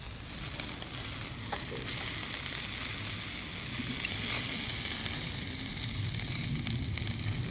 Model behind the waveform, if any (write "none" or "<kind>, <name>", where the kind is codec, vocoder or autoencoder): none